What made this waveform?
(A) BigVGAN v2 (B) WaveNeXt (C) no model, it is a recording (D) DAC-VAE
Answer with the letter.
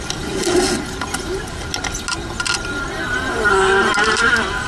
C